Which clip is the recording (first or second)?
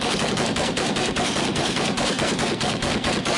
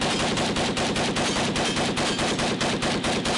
second